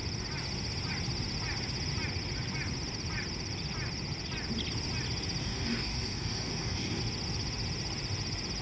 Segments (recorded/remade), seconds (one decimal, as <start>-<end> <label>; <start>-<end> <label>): 0.0-5.4 recorded; 5.4-7.0 remade; 7.0-8.6 recorded